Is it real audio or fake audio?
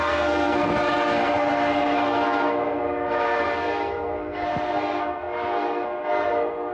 fake